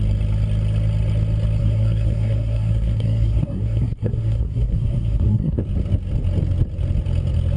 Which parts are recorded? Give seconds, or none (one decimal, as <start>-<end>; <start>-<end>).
0.0-1.6; 5.6-7.6